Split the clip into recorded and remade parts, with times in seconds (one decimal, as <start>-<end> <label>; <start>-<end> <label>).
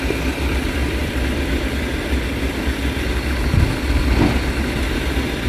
0.0-1.9 remade; 1.9-5.5 recorded